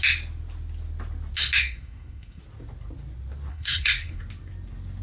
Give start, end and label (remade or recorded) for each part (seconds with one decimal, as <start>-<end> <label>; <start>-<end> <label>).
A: 0.0-1.6 recorded; 1.6-2.4 remade; 2.4-3.5 recorded; 3.5-4.2 remade; 4.2-5.0 recorded